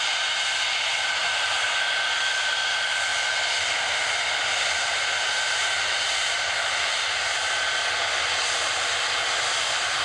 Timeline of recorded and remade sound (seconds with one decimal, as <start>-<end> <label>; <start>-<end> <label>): 0.0-1.2 recorded; 1.2-2.5 remade; 2.5-10.0 recorded